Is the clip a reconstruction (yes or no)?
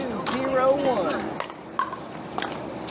no